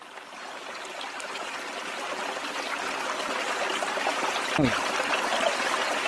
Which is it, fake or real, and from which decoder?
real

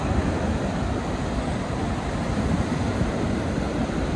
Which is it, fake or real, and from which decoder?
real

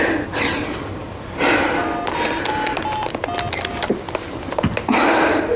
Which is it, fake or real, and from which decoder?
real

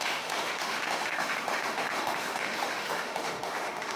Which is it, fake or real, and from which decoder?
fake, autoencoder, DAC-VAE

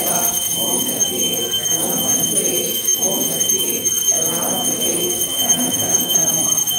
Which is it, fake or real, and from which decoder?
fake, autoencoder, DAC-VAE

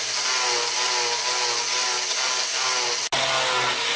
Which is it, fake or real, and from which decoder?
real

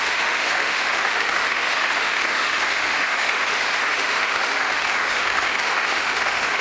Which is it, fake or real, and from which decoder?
fake, autoencoder, DAC-VAE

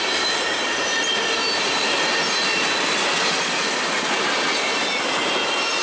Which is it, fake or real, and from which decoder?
real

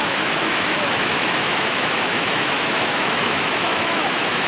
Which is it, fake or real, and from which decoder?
fake, autoencoder, DAC-VAE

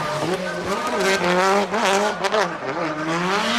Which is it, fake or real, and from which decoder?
real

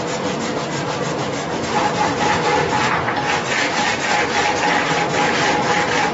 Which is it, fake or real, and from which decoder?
real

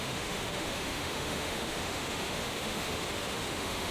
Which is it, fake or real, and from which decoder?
fake, autoencoder, DAC-VAE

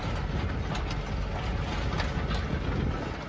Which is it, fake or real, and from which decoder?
real